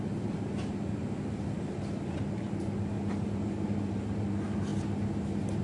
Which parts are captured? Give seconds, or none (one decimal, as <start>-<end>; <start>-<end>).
0.0-5.6